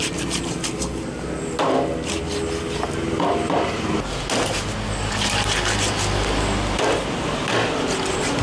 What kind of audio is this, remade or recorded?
recorded